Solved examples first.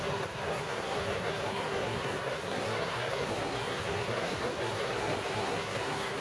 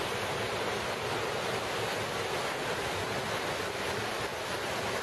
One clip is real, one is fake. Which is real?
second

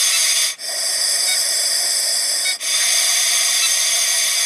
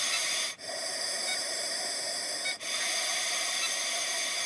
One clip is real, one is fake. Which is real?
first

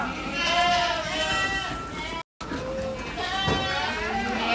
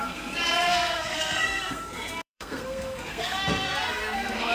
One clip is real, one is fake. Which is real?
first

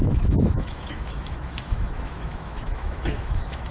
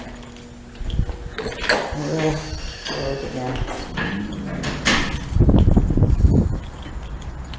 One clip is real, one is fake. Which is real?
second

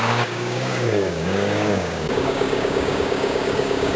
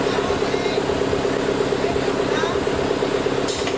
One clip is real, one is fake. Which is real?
second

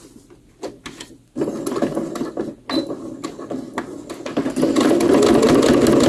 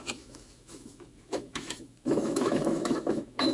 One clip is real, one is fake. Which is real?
first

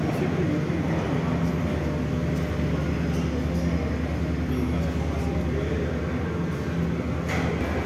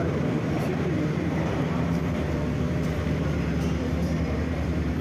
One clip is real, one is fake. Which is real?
first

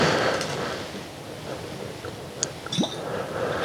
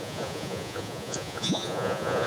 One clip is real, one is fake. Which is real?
first